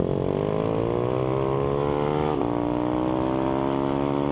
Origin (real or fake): real